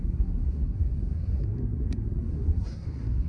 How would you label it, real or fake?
fake